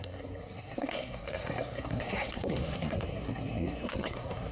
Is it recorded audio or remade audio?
remade